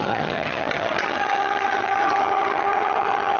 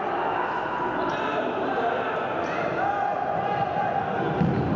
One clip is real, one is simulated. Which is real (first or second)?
second